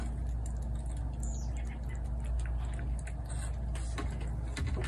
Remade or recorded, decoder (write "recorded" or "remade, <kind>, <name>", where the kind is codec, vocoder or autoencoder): recorded